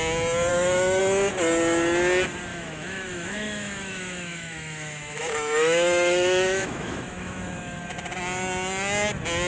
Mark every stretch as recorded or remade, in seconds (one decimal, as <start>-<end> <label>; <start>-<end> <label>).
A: 0.0-0.5 recorded; 0.5-1.0 remade; 1.0-2.5 recorded; 2.5-7.8 remade; 7.8-9.5 recorded